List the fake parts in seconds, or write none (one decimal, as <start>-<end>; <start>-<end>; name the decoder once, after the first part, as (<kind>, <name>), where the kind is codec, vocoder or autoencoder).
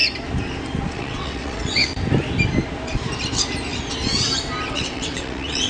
0.9-1.9 (vocoder, WaveNeXt); 4.7-5.7